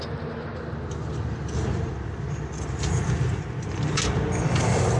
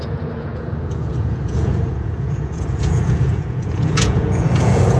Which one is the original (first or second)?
first